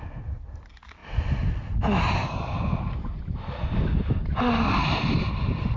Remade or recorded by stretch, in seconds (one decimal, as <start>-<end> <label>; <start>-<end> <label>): 0.0-1.0 recorded; 1.0-1.8 remade; 1.8-3.9 recorded; 3.9-5.8 remade